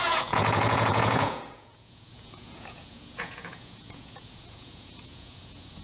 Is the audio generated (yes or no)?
yes